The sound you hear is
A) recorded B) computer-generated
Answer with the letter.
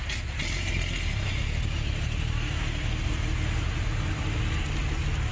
A